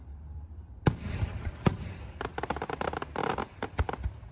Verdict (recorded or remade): remade